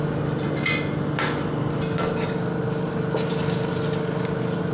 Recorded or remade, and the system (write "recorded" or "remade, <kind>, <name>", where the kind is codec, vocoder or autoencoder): recorded